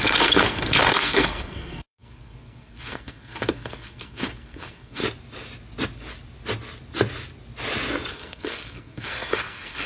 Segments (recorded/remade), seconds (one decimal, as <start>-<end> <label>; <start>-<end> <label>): 0.0-5.0 remade; 5.0-8.1 recorded; 8.1-9.9 remade